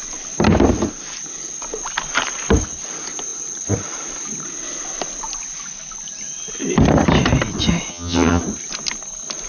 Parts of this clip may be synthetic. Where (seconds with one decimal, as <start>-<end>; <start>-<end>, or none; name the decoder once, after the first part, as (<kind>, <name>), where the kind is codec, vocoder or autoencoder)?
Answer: 7.9-8.4 (vocoder, HiFi-GAN)